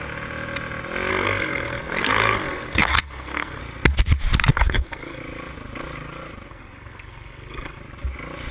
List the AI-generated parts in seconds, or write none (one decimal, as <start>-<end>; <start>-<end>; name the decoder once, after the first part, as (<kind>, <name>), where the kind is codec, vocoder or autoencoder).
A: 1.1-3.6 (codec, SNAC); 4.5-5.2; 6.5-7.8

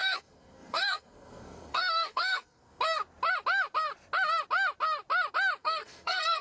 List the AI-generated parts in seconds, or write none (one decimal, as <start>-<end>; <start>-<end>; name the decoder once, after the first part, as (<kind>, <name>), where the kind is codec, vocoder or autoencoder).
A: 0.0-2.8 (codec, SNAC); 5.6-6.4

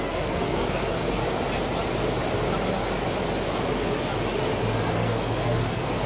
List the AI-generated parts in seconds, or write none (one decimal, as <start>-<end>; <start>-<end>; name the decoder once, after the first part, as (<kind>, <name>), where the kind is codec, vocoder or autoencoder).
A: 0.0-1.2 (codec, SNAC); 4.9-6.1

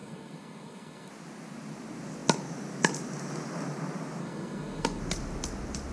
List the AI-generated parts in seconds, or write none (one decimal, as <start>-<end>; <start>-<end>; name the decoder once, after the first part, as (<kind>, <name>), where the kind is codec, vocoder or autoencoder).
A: 0.0-1.1 (codec, SNAC); 4.2-5.0

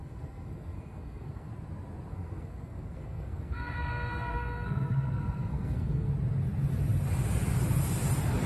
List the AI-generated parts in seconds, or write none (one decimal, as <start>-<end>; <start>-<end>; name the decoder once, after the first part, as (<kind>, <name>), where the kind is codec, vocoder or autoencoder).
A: 0.0-1.5 (codec, SNAC); 2.1-6.1

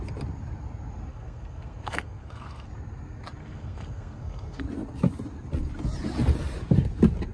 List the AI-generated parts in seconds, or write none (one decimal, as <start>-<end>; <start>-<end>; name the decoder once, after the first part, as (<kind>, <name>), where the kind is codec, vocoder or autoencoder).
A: 1.1-2.7 (codec, SNAC); 3.4-4.6